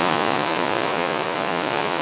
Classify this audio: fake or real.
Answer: fake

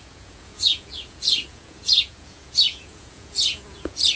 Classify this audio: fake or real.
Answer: fake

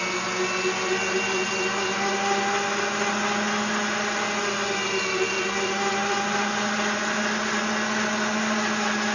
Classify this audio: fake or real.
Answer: real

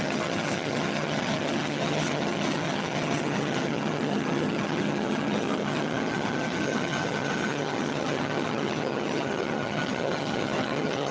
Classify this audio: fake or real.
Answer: fake